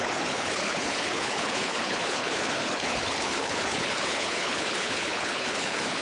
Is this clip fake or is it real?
fake